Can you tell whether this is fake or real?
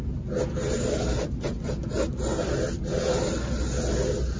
real